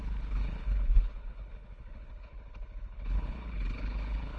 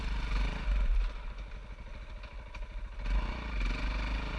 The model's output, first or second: first